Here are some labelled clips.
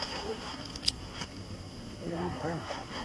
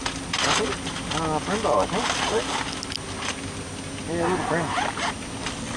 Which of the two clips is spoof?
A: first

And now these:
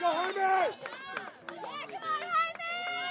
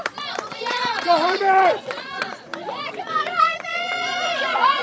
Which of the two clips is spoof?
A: second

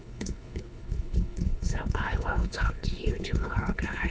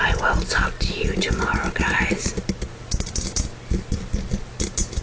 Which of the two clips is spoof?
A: first